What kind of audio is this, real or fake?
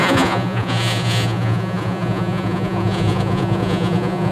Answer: fake